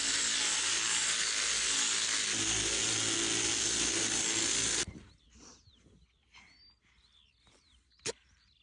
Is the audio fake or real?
real